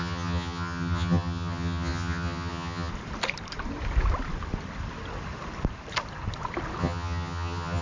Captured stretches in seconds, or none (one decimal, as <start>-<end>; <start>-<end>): 2.9-6.8